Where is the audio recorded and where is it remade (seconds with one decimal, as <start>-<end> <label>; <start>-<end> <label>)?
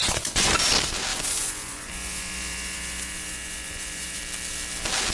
0.0-0.5 remade; 0.5-1.1 recorded; 1.1-4.2 remade; 4.2-5.1 recorded